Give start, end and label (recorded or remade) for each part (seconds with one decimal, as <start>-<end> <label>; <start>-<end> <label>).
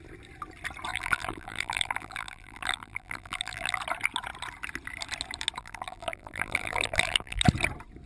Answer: 0.0-0.9 recorded; 0.9-3.8 remade; 3.8-5.6 recorded; 5.6-7.4 remade; 7.4-8.1 recorded